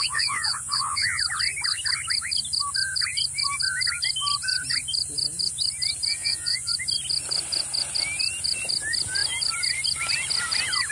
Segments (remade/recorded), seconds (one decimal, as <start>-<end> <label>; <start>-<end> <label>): 0.0-1.2 remade; 1.2-6.1 recorded; 6.1-6.7 remade; 6.7-10.9 recorded